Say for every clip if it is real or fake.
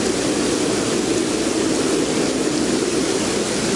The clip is real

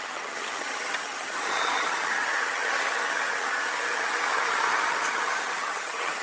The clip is fake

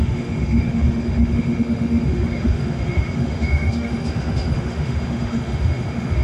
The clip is fake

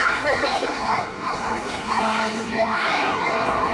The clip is fake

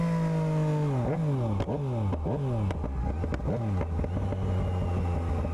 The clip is real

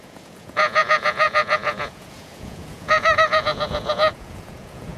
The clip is fake